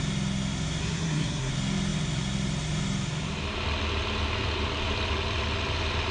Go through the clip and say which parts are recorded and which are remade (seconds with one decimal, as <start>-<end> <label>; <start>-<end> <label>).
0.0-0.8 recorded; 0.8-1.5 remade; 1.5-6.1 recorded